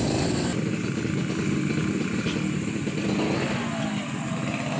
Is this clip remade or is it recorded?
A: recorded